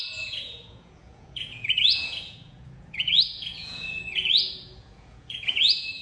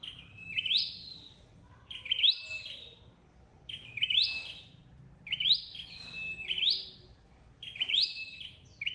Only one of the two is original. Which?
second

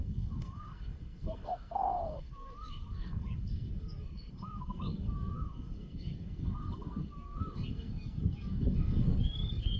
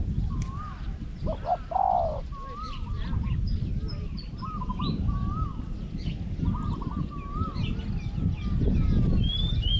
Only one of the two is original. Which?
second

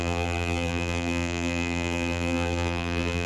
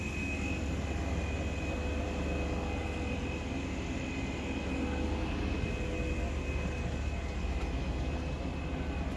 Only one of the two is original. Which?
second